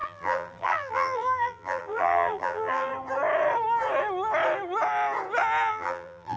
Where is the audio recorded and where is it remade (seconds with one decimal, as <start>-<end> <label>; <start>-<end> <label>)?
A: 0.0-2.9 remade; 2.9-5.7 recorded; 5.7-6.4 remade

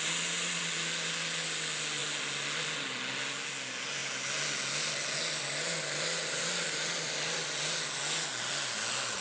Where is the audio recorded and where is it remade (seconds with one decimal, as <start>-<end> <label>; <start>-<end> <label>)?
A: 0.0-9.2 recorded

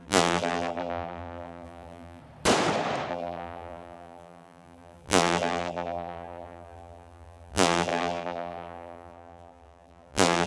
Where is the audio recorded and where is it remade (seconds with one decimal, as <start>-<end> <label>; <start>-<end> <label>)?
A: 0.0-2.2 remade; 2.2-3.1 recorded; 3.1-10.5 remade

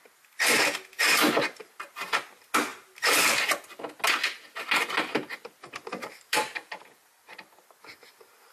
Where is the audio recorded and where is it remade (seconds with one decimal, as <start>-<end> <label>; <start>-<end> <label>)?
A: 0.0-5.9 recorded; 5.9-7.1 remade; 7.1-8.5 recorded